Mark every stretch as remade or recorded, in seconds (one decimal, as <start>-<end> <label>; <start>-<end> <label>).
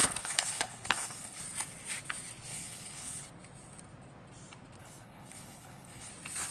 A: 0.0-1.4 remade; 1.4-2.5 recorded; 2.5-3.3 remade; 3.3-4.8 recorded; 4.8-6.1 remade; 6.1-6.5 recorded